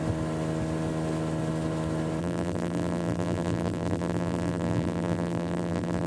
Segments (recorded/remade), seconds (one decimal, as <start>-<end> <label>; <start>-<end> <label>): 0.0-2.2 recorded; 2.2-6.1 remade